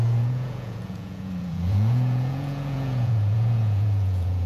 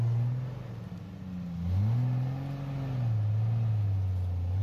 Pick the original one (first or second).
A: second